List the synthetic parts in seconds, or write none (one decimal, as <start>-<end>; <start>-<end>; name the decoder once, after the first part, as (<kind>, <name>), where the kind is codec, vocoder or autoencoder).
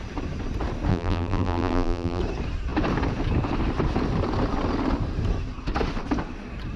0.9-2.2 (vocoder, BigVGAN v2)